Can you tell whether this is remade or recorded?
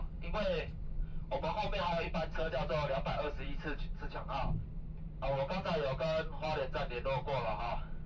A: remade